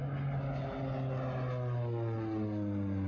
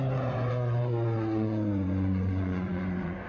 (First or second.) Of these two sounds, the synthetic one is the second